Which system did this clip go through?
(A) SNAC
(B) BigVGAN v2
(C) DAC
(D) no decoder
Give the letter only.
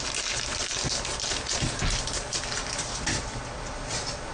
D